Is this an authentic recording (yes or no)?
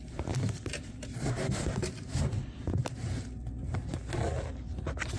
yes